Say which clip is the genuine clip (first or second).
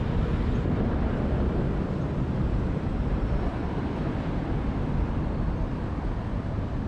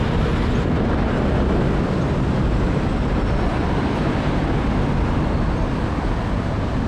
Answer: second